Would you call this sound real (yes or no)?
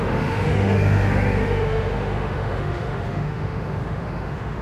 no